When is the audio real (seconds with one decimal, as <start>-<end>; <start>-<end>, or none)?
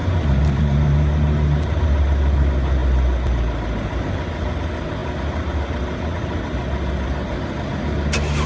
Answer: 0.0-8.5